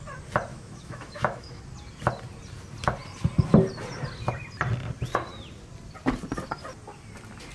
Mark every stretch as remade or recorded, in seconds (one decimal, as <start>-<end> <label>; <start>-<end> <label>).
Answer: 0.0-0.5 recorded; 0.5-1.6 remade; 1.6-7.5 recorded